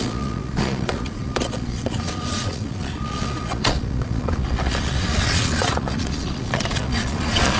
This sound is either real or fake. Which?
fake